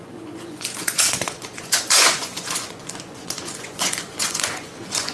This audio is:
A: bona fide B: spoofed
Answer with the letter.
B